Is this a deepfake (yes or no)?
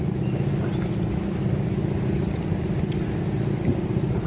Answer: no